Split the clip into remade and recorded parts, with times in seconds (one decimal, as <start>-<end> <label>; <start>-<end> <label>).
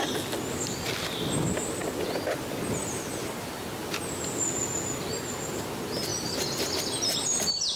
0.0-7.8 recorded